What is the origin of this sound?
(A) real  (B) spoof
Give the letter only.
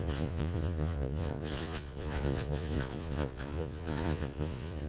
B